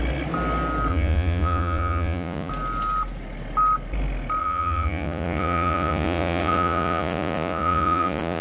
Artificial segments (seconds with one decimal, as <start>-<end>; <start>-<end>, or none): 0.9-2.5; 4.4-8.4